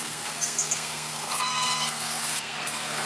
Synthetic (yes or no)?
yes